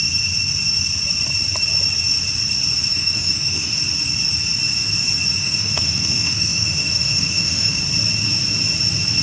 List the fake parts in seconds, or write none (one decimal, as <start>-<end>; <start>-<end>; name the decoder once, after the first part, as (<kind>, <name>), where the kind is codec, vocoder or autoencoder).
2.9-3.8 (autoencoder, DAC-VAE); 5.4-7.8